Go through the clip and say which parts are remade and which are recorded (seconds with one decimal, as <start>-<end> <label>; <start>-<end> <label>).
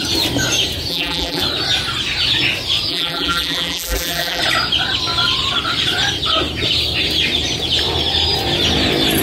0.0-0.9 recorded; 0.9-1.4 remade; 1.4-2.9 recorded; 2.9-4.4 remade; 4.4-9.2 recorded